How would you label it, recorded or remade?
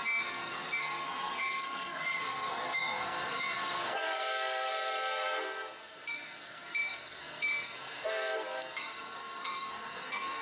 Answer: remade